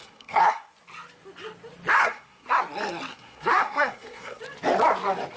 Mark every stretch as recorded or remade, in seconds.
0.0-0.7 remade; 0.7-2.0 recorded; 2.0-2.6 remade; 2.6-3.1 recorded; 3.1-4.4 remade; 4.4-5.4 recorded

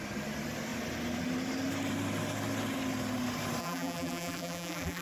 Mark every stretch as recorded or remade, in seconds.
0.0-3.6 recorded; 3.6-5.0 remade

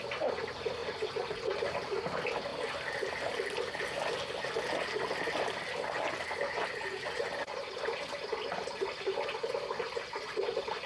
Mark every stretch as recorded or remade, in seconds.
0.0-0.8 recorded; 0.8-1.8 remade; 1.8-10.9 recorded

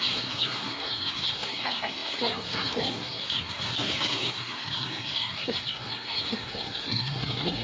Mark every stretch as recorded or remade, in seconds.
0.0-7.6 remade

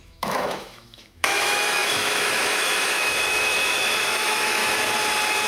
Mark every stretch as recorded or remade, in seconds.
0.0-4.6 remade; 4.6-5.5 recorded

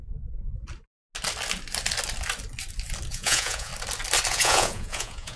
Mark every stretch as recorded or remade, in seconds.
0.0-3.1 recorded; 3.1-3.7 remade; 3.7-4.3 recorded; 4.3-5.4 remade